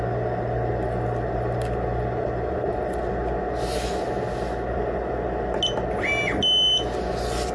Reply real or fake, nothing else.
real